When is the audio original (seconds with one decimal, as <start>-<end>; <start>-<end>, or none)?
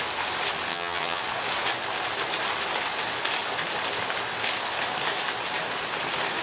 0.0-0.7; 1.2-6.4